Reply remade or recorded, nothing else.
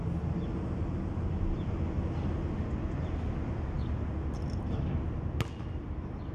recorded